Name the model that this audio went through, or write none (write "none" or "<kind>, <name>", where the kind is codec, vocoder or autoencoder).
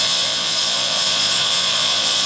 vocoder, Vocos